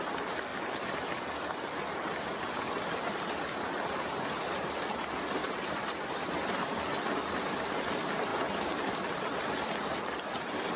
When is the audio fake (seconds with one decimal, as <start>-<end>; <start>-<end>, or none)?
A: 5.4-6.7; 8.3-9.4